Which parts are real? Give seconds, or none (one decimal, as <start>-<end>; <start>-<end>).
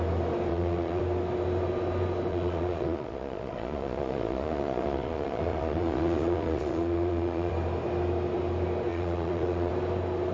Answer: 0.0-0.5; 1.0-2.3; 7.5-8.9; 9.7-10.3